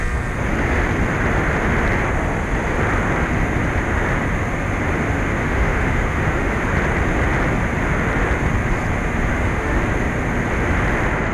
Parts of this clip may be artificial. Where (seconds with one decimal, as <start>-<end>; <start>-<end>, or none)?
5.4-6.6; 9.3-9.8